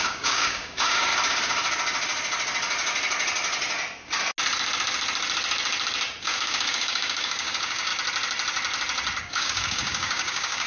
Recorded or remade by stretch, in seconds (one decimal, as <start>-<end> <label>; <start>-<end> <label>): 0.0-1.1 remade; 1.1-6.2 recorded; 6.2-7.9 remade; 7.9-9.2 recorded; 9.2-10.7 remade